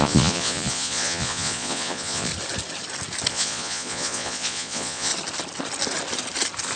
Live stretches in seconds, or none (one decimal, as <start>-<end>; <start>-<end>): 2.3-3.3; 5.1-6.8